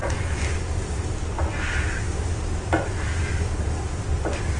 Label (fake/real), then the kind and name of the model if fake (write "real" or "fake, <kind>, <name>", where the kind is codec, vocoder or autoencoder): real